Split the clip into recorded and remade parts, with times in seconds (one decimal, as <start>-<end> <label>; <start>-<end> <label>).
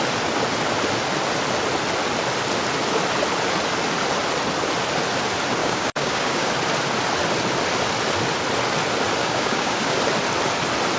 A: 0.0-5.6 recorded; 5.6-6.5 remade; 6.5-9.2 recorded; 9.2-10.0 remade; 10.0-11.0 recorded